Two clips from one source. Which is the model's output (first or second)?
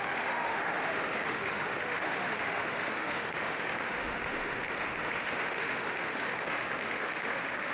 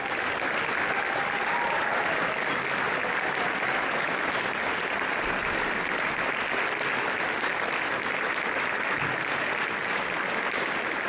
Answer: first